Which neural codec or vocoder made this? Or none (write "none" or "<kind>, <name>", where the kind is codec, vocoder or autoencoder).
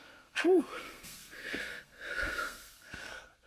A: codec, SNAC